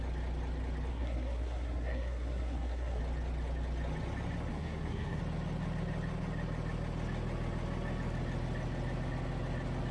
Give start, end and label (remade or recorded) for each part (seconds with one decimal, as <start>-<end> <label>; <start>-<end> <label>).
0.0-0.9 recorded; 0.9-3.0 remade; 3.0-4.5 recorded; 4.5-5.2 remade; 5.2-9.9 recorded